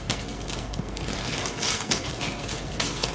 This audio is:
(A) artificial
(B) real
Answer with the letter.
A